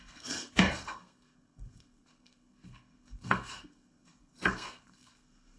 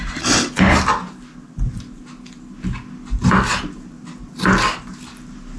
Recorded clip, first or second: second